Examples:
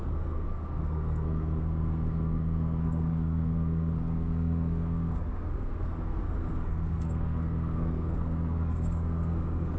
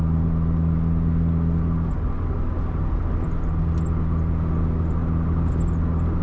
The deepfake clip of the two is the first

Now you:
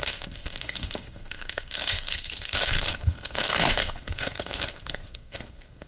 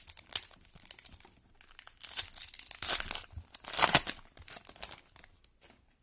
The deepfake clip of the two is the first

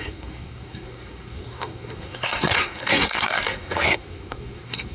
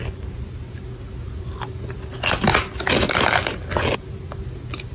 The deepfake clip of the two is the first